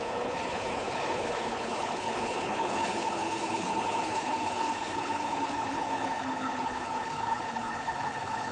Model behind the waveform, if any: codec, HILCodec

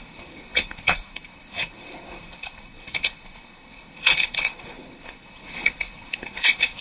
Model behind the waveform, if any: codec, HILCodec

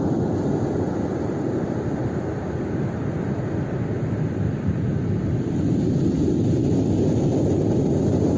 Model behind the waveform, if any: none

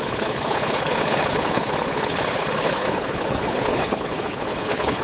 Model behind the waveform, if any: codec, HILCodec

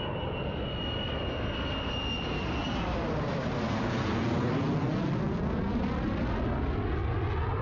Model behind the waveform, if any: none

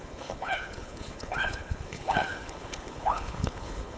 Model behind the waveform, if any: codec, HILCodec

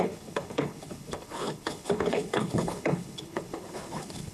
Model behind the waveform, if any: codec, HILCodec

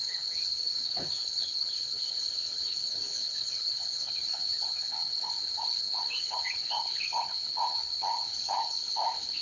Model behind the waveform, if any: codec, HILCodec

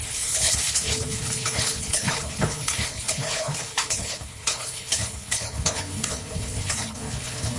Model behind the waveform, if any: codec, HILCodec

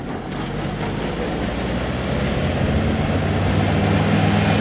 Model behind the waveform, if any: none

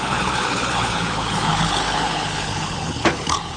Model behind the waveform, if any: codec, HILCodec